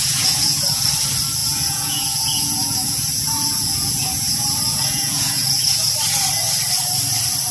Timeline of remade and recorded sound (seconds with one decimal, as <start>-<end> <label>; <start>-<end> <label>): 0.0-0.8 remade; 0.8-1.4 recorded; 1.4-5.9 remade; 5.9-7.5 recorded